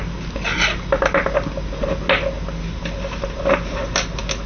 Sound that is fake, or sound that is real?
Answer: real